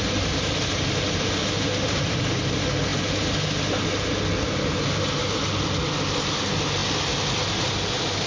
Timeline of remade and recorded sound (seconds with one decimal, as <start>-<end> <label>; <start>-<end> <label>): 0.0-8.3 recorded